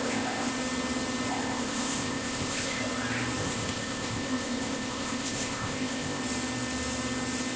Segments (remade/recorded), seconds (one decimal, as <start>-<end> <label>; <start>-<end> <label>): 0.0-0.5 remade; 0.5-1.3 recorded; 1.3-2.8 remade; 2.8-3.4 recorded; 3.4-6.2 remade; 6.2-7.6 recorded